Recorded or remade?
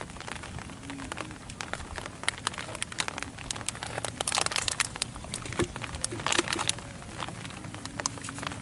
recorded